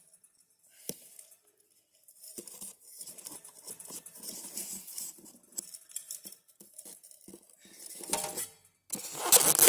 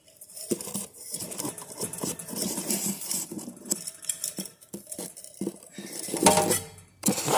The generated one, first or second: second